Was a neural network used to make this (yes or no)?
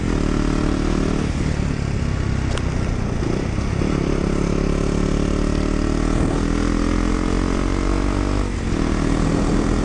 no